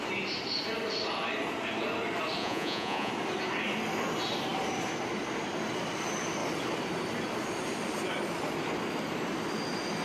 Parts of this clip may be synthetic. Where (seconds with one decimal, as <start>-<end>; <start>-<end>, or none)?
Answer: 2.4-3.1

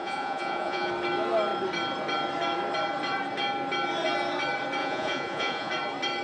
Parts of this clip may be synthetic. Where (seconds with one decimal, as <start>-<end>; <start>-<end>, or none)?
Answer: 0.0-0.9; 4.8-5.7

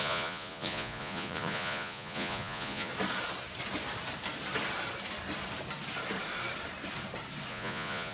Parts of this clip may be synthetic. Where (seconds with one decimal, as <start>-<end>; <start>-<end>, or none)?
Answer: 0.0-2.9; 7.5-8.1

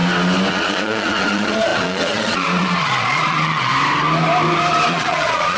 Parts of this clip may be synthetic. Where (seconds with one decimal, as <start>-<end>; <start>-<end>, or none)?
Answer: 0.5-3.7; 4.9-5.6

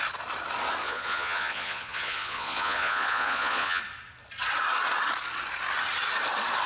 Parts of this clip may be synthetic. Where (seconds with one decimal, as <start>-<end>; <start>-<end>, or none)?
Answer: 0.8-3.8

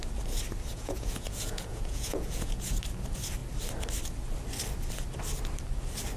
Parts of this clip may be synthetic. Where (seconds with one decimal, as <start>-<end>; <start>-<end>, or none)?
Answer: 0.7-2.8